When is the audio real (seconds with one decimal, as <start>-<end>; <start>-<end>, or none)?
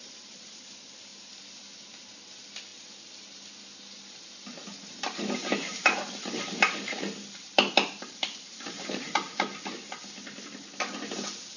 0.0-5.4; 9.5-11.6